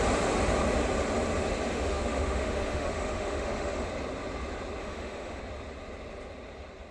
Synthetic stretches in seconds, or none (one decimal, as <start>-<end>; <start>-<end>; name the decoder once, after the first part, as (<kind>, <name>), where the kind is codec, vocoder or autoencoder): 1.7-3.9 (autoencoder, DAC-VAE); 4.8-5.4